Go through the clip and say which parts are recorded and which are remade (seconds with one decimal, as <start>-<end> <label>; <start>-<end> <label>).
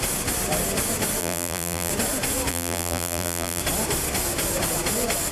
0.0-1.2 recorded; 1.2-1.9 remade; 1.9-2.5 recorded; 2.5-3.6 remade; 3.6-5.3 recorded